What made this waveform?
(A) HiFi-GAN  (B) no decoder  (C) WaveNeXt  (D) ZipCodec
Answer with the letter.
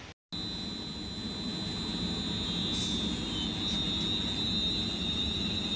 B